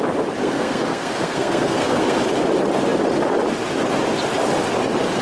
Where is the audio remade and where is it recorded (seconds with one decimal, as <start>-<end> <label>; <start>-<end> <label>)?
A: 0.0-0.4 recorded; 0.4-2.2 remade; 2.2-5.2 recorded